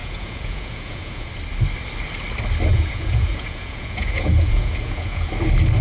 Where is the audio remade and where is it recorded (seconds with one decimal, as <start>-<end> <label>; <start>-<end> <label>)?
0.0-1.3 remade; 1.3-2.7 recorded; 2.7-5.3 remade; 5.3-5.8 recorded